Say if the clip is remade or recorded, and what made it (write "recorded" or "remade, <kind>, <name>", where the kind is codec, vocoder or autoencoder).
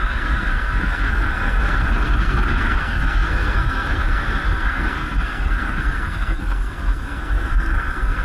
remade, codec, SNAC